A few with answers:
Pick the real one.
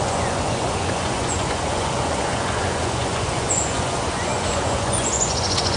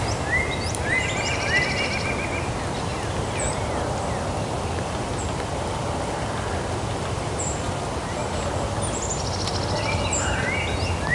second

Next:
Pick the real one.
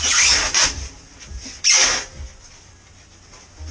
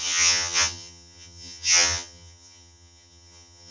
first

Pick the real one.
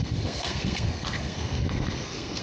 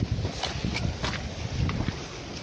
second